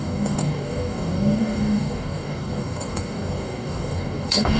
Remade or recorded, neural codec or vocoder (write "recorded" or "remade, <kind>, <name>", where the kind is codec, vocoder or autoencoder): remade, codec, DAC